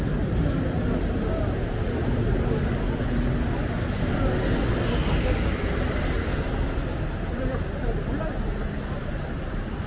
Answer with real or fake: real